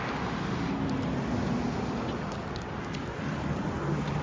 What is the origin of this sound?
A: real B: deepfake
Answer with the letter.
A